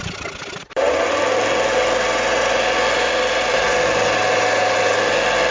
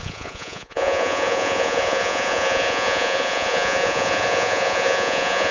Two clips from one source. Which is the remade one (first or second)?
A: second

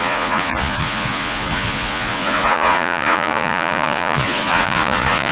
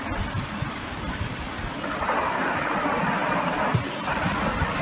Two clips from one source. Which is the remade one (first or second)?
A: first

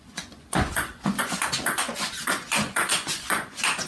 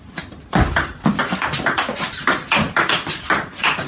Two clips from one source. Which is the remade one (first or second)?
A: first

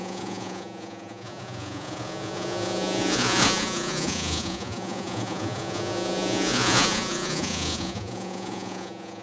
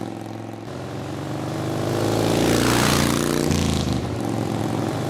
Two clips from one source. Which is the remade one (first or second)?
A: first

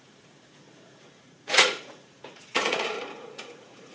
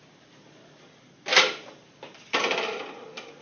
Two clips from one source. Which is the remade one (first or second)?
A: first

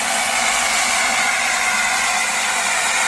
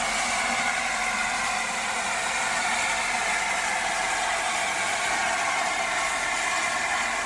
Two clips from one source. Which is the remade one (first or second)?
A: first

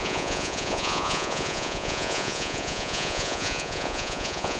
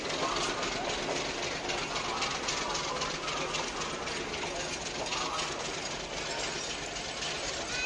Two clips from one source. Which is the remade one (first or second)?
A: first